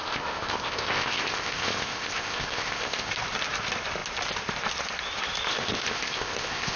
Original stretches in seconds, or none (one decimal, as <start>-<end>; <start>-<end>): 3.1-5.5